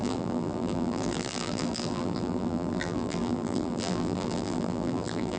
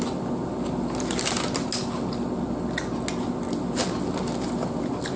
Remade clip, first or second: first